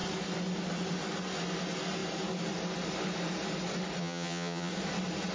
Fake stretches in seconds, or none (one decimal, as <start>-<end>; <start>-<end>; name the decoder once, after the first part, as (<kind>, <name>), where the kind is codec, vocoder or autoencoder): 4.0-4.7 (vocoder, HiFi-GAN)